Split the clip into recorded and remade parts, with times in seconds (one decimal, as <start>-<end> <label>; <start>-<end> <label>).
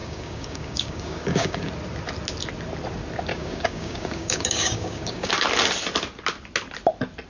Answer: 0.0-1.7 remade; 1.7-3.3 recorded; 3.3-5.3 remade; 5.3-7.3 recorded